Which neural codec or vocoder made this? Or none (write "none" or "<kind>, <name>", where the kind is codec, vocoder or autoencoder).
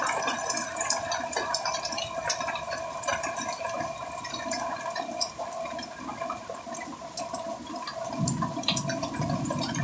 none